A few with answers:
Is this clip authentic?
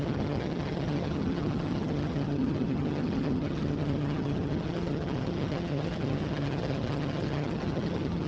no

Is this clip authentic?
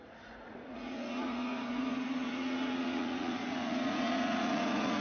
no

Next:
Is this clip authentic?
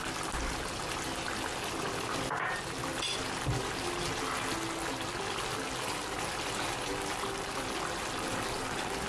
yes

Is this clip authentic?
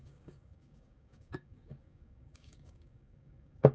no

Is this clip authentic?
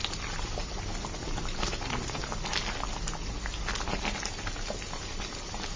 yes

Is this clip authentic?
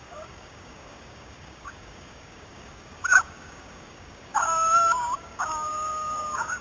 no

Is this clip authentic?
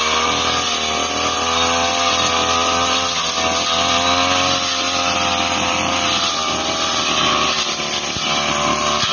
yes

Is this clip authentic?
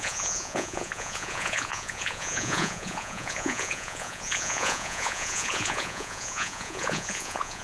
no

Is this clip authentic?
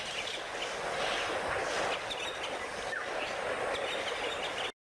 yes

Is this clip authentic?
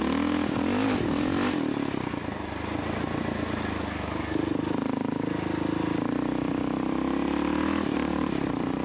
yes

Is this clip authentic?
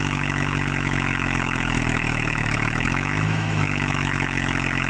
no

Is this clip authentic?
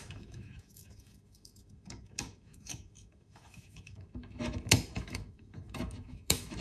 no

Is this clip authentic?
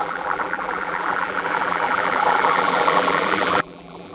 no